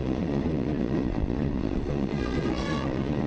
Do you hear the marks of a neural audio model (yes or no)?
yes